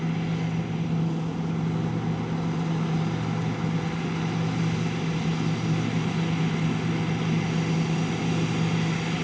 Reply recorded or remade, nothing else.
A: recorded